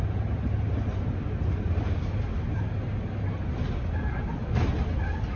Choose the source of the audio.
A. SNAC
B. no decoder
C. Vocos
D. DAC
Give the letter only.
B